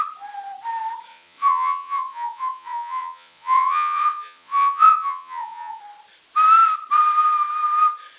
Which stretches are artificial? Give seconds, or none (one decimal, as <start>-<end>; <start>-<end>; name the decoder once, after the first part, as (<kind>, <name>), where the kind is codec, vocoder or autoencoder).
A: 1.1-5.8 (vocoder, Vocos)